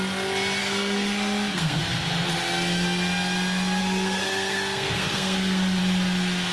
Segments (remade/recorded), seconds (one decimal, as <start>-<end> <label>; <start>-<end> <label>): 0.0-0.6 recorded; 0.6-1.8 remade; 1.8-3.8 recorded; 3.8-5.8 remade; 5.8-6.5 recorded